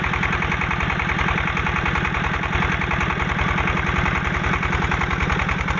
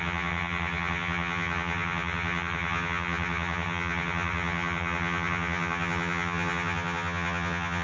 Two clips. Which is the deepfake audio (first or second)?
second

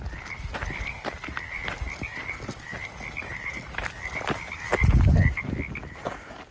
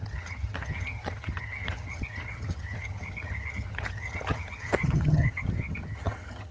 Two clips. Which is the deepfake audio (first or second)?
second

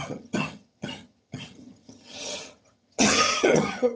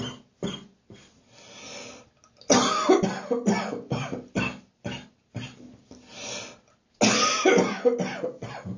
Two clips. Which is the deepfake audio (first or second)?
first